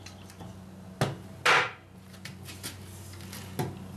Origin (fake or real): real